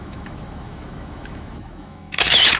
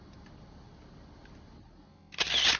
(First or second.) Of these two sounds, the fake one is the first